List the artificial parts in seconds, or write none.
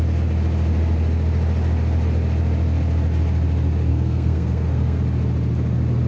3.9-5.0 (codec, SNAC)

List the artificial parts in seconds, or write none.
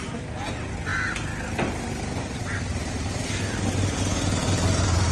none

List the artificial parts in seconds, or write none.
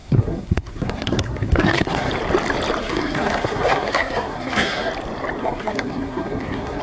0.0-2.1 (codec, SNAC); 2.8-4.9; 5.4-6.8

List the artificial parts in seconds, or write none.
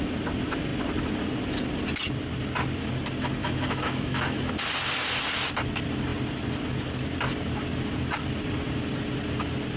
3.4-4.5 (autoencoder, DAC-VAE)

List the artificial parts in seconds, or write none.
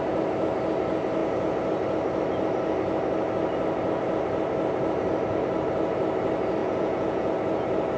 6.6-7.3 (vocoder, Vocos)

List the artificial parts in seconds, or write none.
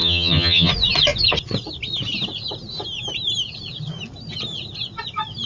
0.0-0.7 (vocoder, HiFi-GAN)